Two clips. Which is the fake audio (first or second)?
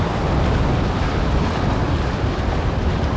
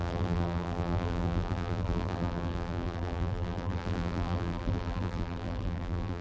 second